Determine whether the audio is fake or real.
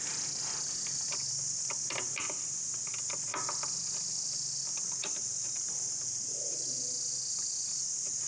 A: real